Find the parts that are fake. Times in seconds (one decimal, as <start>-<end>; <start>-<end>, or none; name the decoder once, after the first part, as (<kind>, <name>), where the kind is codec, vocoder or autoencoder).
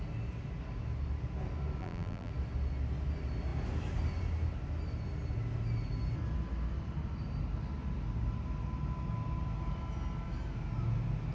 1.8-2.3 (vocoder, BigVGAN v2)